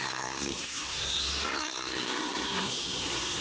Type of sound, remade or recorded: remade